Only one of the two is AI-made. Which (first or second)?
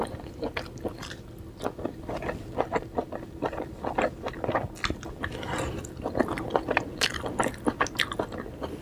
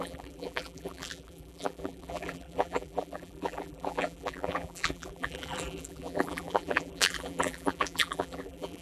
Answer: second